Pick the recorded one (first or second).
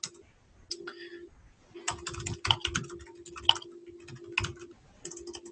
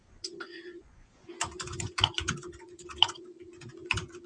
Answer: first